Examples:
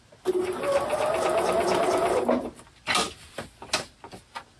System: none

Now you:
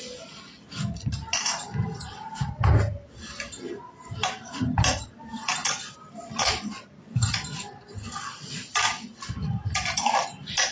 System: none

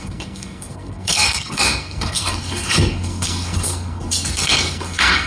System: codec, SNAC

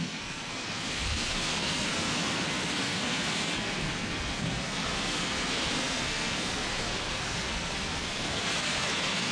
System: codec, SNAC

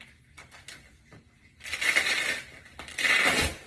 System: none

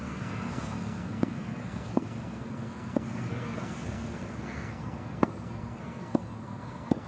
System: codec, SNAC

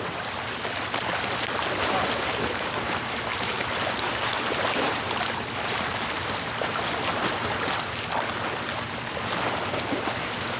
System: none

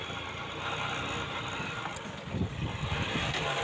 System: none